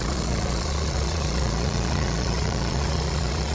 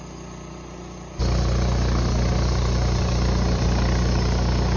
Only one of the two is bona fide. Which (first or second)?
second